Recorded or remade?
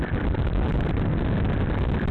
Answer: recorded